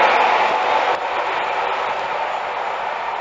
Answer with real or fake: real